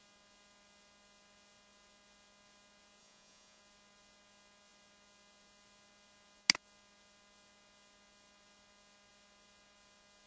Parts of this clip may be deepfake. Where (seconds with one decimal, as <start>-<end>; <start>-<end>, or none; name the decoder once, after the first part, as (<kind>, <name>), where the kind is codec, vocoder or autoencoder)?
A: 3.0-3.6 (vocoder, Vocos)